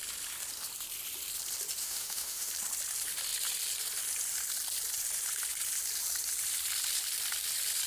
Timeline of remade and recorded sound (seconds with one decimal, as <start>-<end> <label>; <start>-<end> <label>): 0.0-1.8 recorded; 1.8-2.5 remade; 2.5-7.9 recorded